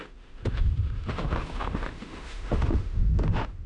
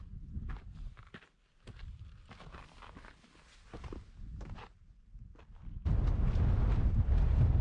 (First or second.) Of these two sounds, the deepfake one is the first